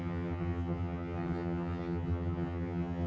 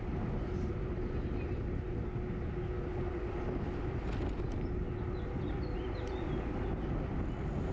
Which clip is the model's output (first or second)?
first